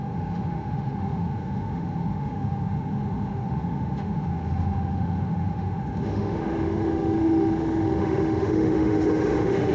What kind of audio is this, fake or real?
fake